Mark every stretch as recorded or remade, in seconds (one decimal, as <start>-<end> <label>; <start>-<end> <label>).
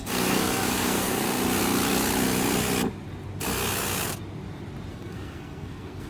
0.0-1.2 remade; 1.2-4.9 recorded; 4.9-6.1 remade